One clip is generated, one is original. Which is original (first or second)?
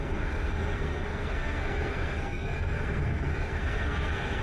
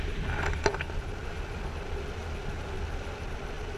second